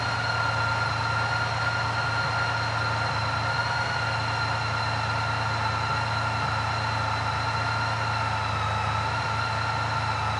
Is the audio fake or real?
real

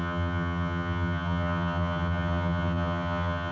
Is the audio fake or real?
fake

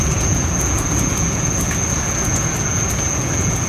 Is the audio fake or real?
fake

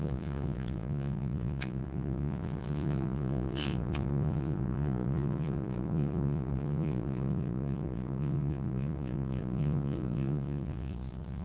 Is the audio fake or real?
fake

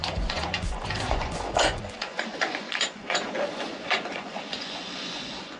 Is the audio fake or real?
fake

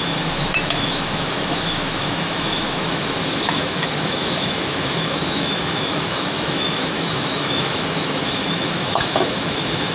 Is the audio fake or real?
fake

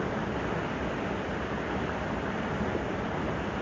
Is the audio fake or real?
real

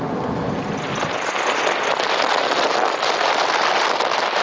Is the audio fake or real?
real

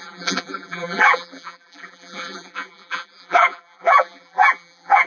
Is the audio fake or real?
fake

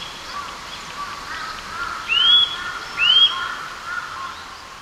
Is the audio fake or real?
real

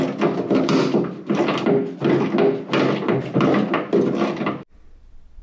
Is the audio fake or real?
real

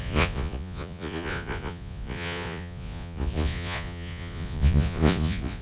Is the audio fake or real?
fake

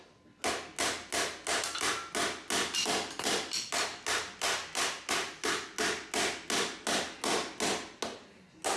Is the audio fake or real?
real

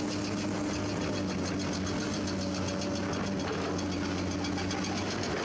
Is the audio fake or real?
real